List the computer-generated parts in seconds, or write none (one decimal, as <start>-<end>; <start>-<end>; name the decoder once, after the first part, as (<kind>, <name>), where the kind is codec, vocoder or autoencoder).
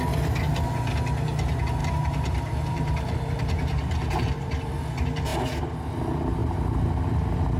1.8-4.5 (vocoder, BigVGAN v2); 6.4-6.9